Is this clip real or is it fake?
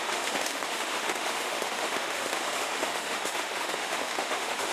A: fake